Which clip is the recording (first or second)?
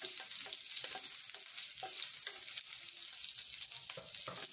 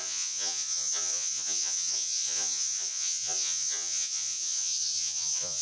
first